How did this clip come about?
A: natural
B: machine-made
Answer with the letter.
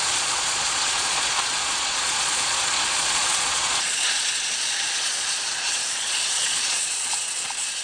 B